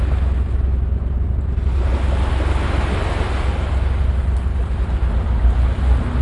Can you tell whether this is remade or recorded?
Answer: recorded